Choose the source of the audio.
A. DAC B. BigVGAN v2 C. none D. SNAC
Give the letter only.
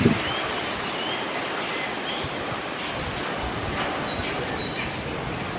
C